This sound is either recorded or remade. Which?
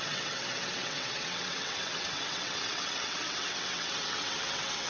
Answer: remade